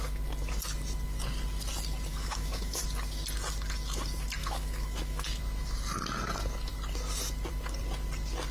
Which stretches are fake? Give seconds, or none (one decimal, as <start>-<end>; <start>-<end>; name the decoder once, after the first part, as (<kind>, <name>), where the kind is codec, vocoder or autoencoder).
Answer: 2.1-2.8 (autoencoder, DAC-VAE); 4.4-5.4